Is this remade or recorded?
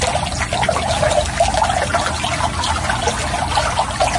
recorded